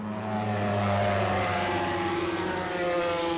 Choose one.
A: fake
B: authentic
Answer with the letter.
A